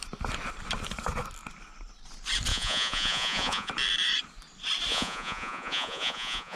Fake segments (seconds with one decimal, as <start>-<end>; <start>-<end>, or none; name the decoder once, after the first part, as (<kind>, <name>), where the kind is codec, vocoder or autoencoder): 2.5-3.7 (vocoder, Vocos); 4.9-6.6